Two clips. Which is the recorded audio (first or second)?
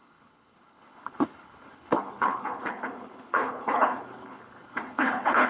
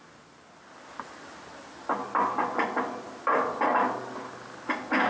second